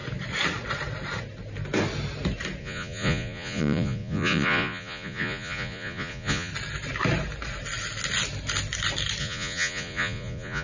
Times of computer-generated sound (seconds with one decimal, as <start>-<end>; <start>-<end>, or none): 2.6-6.5; 9.2-10.6

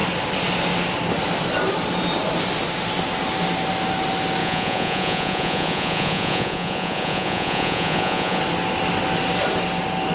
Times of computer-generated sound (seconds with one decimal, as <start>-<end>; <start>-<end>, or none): 4.4-8.4

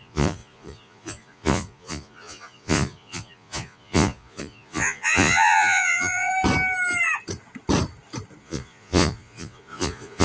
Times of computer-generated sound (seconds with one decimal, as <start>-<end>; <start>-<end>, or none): 0.0-6.3; 8.4-10.2

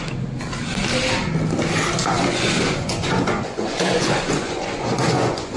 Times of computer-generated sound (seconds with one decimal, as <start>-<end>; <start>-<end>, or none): 2.0-5.6